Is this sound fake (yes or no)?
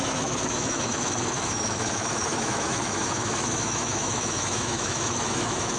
yes